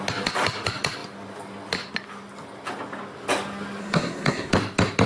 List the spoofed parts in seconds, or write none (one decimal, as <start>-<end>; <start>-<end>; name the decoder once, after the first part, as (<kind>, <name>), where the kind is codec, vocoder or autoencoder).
3.8-4.5 (codec, SNAC)